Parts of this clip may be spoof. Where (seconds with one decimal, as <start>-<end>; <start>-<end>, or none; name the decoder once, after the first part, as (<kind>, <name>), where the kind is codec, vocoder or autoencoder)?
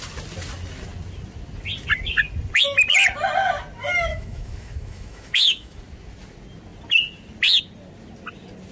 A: 4.1-5.8 (autoencoder, DAC-VAE)